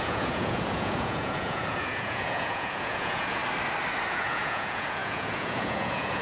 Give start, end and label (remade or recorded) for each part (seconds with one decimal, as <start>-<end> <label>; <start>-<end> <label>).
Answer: 0.0-3.4 remade; 3.4-4.1 recorded; 4.1-6.2 remade